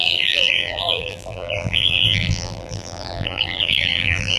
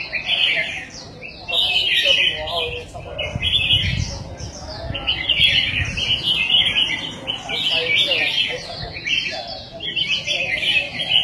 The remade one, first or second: first